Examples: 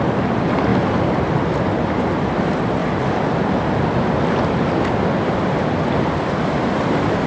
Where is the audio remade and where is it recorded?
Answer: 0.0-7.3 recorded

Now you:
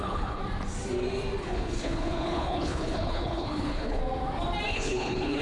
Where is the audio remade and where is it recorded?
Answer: 0.0-0.4 remade; 0.4-1.4 recorded; 1.4-4.0 remade; 4.0-4.7 recorded; 4.7-5.4 remade

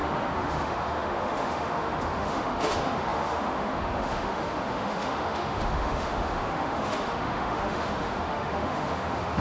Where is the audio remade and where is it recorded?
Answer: 0.0-9.4 remade

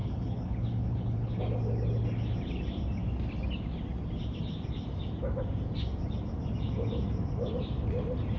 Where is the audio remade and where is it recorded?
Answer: 0.0-1.4 remade; 1.4-8.4 recorded

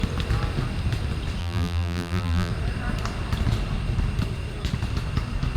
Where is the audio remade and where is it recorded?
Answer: 0.0-1.4 recorded; 1.4-2.5 remade; 2.5-5.6 recorded

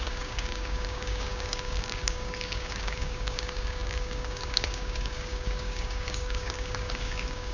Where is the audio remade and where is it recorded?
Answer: 0.0-7.5 remade

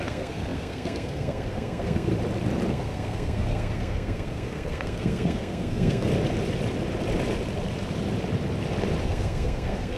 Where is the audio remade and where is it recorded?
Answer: 0.0-2.1 remade; 2.1-2.7 recorded; 2.7-6.1 remade; 6.1-9.0 recorded; 9.0-10.0 remade